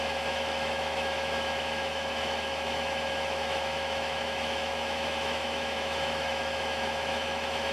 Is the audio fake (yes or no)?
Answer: yes